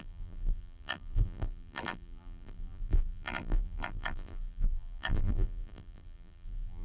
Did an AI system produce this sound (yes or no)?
yes